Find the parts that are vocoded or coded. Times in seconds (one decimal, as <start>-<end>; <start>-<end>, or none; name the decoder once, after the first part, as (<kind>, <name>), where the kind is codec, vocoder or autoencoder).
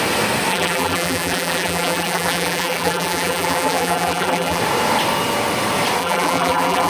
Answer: 0.5-4.6 (vocoder, BigVGAN v2); 6.0-6.9